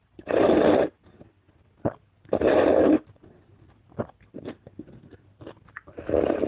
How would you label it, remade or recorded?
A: recorded